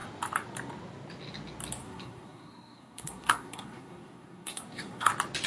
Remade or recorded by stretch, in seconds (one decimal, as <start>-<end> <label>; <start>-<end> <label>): 0.0-1.8 recorded; 1.8-5.1 remade; 5.1-5.5 recorded

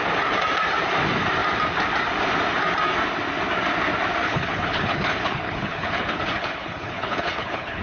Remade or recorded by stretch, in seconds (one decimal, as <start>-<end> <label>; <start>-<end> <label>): 0.0-4.2 recorded; 4.2-7.8 remade